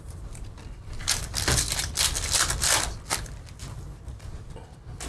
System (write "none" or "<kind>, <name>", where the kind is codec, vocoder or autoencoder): none